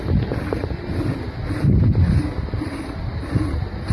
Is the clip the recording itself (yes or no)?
yes